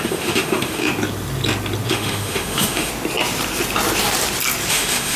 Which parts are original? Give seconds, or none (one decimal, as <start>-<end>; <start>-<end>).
0.8-1.9; 2.9-4.7